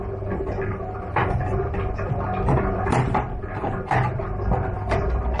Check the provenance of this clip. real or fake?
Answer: real